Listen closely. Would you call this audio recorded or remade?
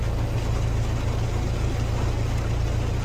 recorded